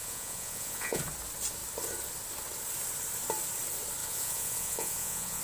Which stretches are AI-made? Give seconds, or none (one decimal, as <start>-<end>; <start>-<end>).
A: 0.0-1.0; 4.0-5.4